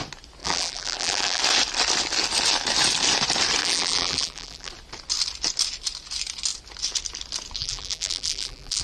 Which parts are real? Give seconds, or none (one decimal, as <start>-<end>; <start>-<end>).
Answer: 0.0-0.4; 1.4-3.6; 4.7-7.6

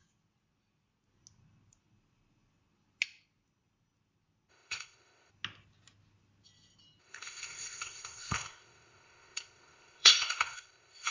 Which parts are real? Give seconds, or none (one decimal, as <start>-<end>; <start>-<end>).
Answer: 0.0-4.5; 5.3-7.0

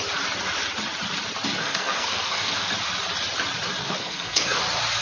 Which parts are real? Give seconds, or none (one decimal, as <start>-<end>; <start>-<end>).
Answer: 0.0-1.6; 2.7-3.8; 4.6-5.0

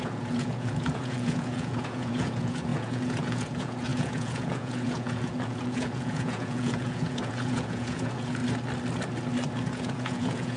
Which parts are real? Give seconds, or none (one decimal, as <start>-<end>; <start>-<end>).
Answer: 8.4-9.6

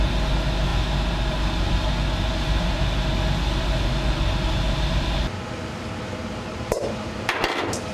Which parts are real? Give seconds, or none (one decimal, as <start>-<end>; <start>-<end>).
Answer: 0.0-7.9

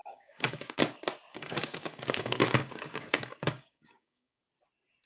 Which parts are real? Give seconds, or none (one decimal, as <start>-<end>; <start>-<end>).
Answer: 0.8-1.3; 4.4-5.1

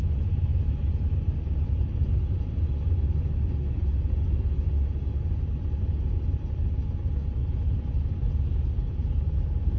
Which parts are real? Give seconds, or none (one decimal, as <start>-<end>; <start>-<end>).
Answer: 0.0-9.8

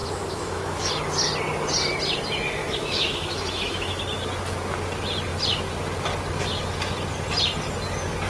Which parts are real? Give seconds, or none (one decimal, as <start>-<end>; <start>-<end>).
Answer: 0.9-2.6; 4.0-8.3